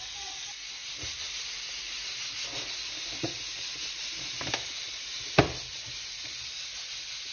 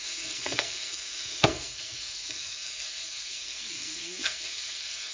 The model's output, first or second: second